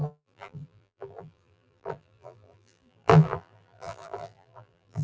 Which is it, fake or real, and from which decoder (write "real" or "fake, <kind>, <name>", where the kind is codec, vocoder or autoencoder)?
fake, vocoder, BigVGAN v2